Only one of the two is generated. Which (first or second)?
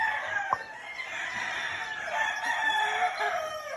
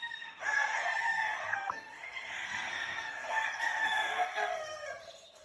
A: second